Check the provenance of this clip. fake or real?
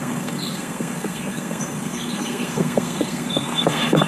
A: fake